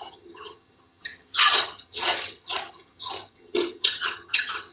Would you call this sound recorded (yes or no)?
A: no